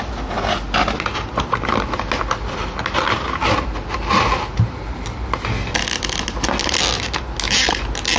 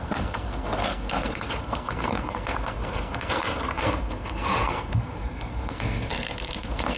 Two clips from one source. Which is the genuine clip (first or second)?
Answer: first